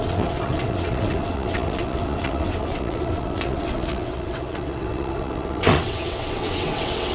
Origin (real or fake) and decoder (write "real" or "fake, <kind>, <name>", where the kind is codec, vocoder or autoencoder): fake, vocoder, WaveNeXt